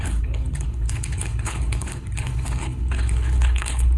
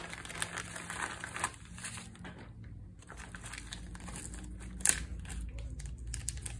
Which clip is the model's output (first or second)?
first